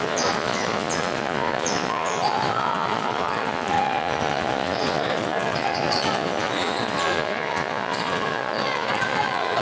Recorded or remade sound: remade